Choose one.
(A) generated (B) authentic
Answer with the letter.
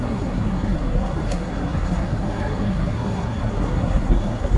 A